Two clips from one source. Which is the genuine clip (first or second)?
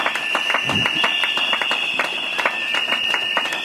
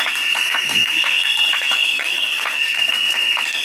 first